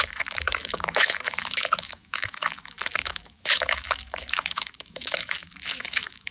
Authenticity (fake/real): fake